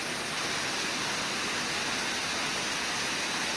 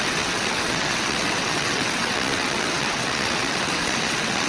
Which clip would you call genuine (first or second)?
first